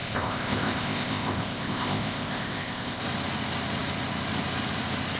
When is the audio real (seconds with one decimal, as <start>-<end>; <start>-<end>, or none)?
3.0-5.2